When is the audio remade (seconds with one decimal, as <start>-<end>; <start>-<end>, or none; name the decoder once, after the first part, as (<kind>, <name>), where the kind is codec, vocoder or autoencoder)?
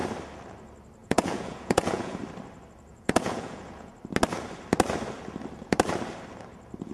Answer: 1.0-2.2 (vocoder, Vocos); 2.9-3.9